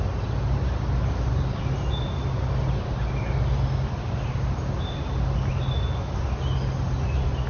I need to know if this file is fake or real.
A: real